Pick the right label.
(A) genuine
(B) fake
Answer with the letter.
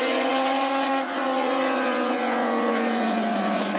B